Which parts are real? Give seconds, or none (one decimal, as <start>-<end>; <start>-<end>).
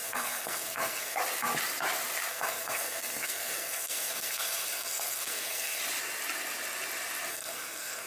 1.2-2.3; 5.8-7.3